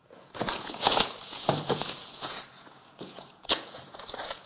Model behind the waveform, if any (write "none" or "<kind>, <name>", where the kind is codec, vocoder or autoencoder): vocoder, Vocos